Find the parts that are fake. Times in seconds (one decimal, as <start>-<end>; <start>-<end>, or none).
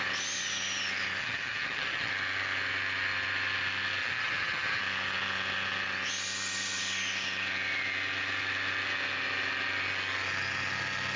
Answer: 1.2-2.1; 4.0-4.8